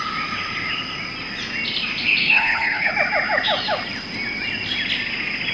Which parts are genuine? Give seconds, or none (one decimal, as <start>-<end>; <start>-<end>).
0.0-2.2; 2.9-5.5